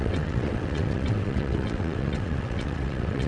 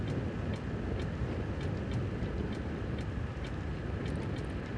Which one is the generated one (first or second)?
first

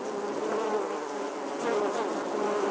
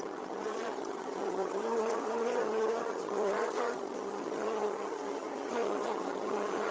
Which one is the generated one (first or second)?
second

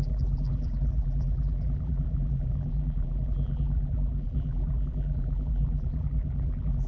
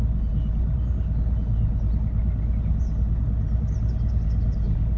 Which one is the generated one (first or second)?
first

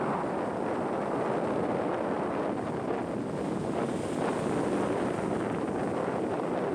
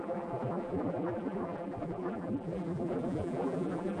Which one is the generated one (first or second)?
second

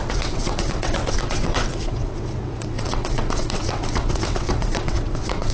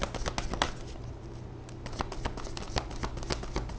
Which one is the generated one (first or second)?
first